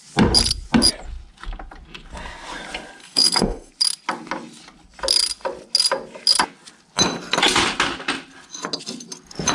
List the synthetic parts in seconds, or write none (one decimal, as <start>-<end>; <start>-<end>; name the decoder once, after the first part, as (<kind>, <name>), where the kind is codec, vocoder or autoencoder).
3.0-3.7 (codec, SNAC)